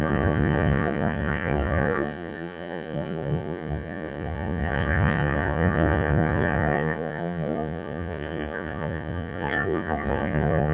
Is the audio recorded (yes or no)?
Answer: no